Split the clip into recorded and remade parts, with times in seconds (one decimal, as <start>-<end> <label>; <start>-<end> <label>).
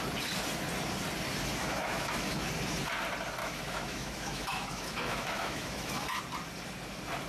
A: 0.0-1.6 recorded; 1.6-2.5 remade; 2.5-3.4 recorded; 3.4-6.2 remade; 6.2-7.3 recorded